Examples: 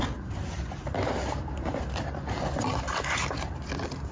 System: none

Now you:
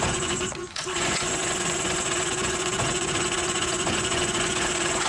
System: vocoder, Vocos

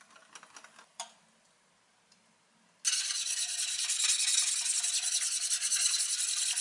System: none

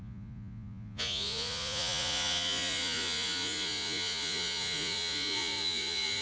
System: vocoder, Vocos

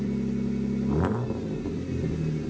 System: none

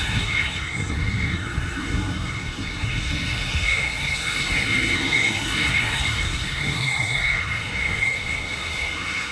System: codec, SNAC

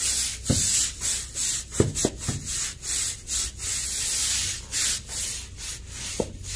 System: none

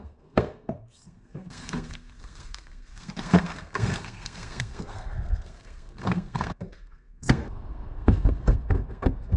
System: codec, SNAC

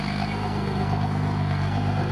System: codec, SNAC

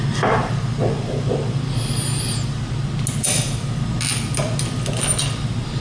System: none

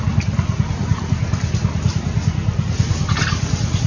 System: none